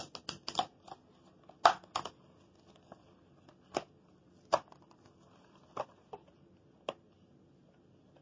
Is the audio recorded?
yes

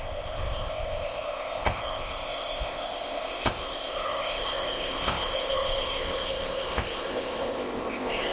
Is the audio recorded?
no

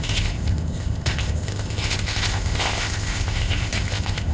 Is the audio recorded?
no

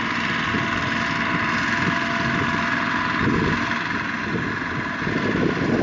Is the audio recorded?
yes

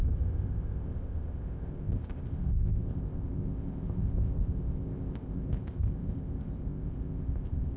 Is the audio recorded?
no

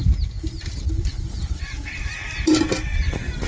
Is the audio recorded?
yes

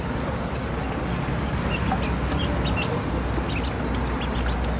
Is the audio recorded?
yes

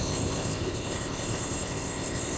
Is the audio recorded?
no